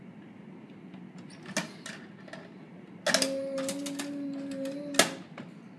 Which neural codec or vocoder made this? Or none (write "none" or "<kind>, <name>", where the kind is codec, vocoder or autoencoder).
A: none